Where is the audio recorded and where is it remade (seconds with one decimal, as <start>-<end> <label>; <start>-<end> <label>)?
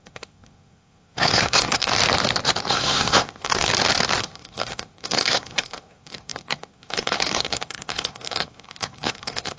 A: 0.0-1.9 remade; 1.9-2.7 recorded; 2.7-3.7 remade; 3.7-4.2 recorded; 4.2-9.6 remade